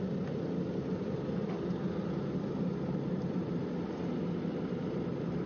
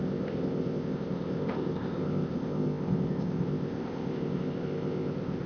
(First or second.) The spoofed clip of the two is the second